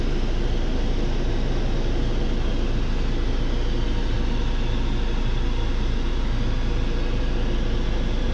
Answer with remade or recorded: recorded